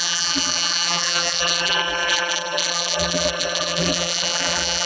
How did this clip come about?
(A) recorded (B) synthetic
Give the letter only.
B